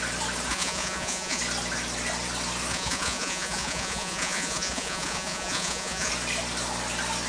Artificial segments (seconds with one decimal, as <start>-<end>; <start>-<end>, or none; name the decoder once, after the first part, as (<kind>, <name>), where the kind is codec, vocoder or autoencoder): 0.5-1.4 (vocoder, Vocos); 2.7-6.1

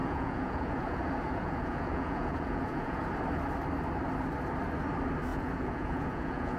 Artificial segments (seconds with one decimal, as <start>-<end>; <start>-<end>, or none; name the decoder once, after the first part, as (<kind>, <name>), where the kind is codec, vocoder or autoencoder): 0.0-3.1 (vocoder, Vocos); 5.3-6.6

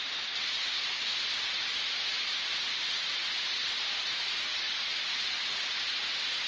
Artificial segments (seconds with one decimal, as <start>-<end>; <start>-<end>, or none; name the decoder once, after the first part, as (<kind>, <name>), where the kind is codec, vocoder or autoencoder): none

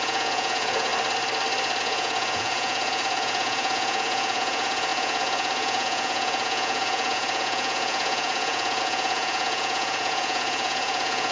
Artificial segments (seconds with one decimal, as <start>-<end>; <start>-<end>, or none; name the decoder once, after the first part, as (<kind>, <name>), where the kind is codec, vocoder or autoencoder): 0.0-0.9 (vocoder, Vocos); 1.8-11.3

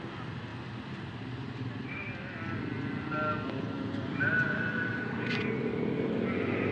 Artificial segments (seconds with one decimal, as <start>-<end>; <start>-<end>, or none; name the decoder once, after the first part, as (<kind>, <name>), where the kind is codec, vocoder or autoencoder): none